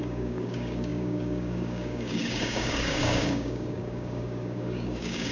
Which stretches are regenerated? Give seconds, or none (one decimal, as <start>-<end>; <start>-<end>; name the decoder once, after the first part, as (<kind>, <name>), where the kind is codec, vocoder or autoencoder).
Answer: 0.0-5.3 (codec, DAC)